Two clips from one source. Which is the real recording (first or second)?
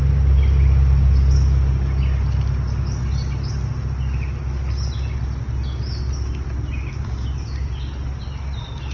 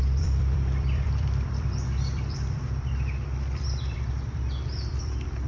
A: first